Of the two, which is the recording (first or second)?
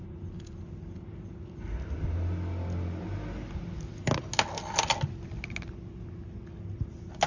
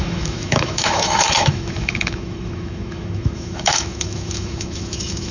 first